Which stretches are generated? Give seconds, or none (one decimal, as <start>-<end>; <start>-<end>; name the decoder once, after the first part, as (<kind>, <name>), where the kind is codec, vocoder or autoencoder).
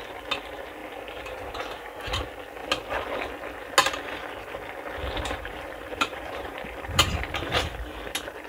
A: 5.0-7.6 (vocoder, BigVGAN v2)